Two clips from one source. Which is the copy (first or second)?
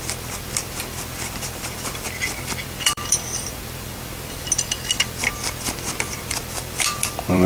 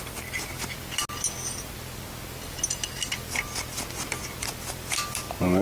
first